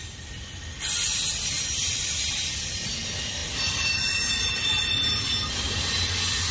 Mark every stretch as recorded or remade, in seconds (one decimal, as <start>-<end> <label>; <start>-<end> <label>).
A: 0.0-6.5 recorded